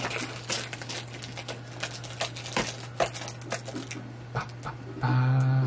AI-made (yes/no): no